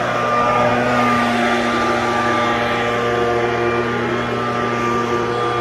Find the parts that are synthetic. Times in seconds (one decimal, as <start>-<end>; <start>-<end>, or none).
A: none